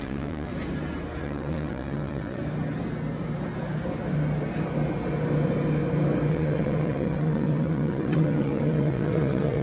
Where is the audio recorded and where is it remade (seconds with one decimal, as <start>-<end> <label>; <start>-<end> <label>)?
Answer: 0.0-0.5 remade; 0.5-1.2 recorded; 1.2-2.4 remade; 2.4-6.3 recorded; 6.3-9.6 remade